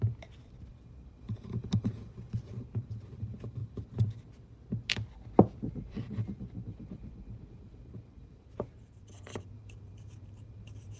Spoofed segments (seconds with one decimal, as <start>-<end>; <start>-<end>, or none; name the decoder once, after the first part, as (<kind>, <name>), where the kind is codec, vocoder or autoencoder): 0.0-3.6 (vocoder, BigVGAN v2); 5.7-11.0